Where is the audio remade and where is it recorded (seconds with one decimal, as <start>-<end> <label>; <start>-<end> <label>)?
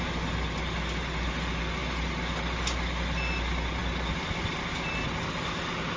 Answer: 0.0-6.0 recorded